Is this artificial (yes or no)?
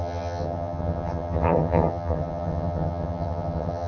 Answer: yes